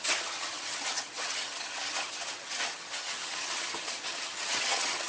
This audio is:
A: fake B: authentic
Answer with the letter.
A